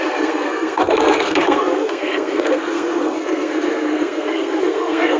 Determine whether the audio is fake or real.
fake